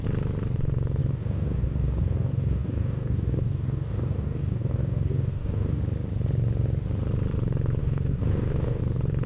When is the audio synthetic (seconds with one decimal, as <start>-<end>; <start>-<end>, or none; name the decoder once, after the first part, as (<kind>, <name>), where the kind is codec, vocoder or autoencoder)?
1.0-5.8 (codec, DAC); 7.8-8.8